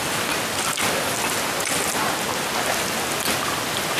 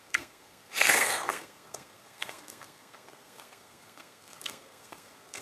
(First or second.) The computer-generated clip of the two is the second